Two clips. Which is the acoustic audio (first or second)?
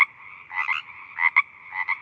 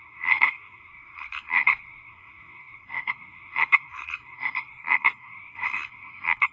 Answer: first